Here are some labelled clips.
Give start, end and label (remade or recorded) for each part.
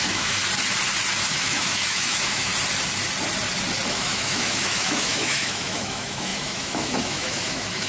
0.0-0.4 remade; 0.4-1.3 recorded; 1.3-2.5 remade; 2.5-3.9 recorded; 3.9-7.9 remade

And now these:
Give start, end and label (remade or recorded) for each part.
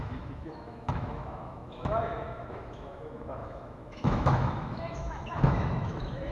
0.0-6.3 remade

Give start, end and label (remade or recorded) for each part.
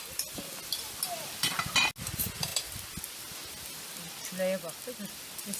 0.0-5.6 recorded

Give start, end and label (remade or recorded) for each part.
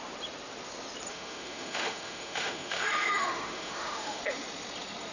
0.0-1.1 recorded; 1.1-4.2 remade; 4.2-5.1 recorded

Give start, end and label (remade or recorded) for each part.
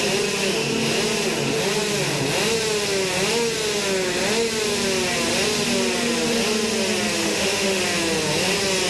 0.0-7.2 recorded; 7.2-7.8 remade; 7.8-8.9 recorded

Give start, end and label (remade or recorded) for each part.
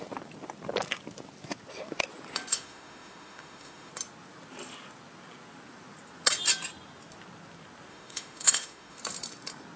0.0-2.5 recorded; 2.5-3.9 remade; 3.9-7.9 recorded; 7.9-9.0 remade; 9.0-9.8 recorded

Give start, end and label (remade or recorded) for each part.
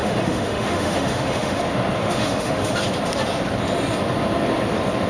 0.0-1.6 remade; 1.6-2.0 recorded; 2.0-2.7 remade; 2.7-5.1 recorded